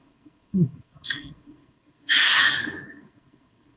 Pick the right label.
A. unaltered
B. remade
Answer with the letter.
B